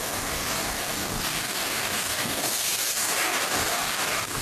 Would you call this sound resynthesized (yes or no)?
yes